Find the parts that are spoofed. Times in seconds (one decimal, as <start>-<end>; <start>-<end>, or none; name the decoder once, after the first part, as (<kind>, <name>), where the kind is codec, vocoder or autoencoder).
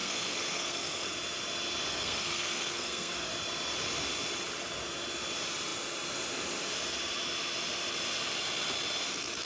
0.0-1.1 (codec, SNAC); 1.9-3.3